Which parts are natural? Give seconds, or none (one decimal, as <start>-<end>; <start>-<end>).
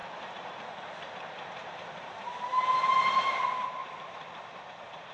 none